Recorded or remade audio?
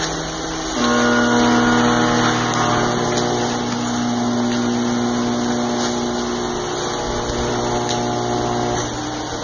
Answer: recorded